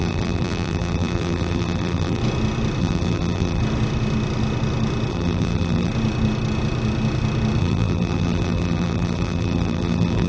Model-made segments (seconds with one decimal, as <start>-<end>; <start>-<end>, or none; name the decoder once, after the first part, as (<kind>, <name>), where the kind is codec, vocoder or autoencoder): 0.0-2.2 (vocoder, BigVGAN v2); 2.8-3.6; 5.1-5.9; 7.6-10.3